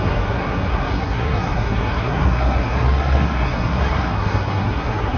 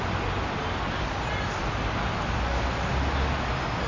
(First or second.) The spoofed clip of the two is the first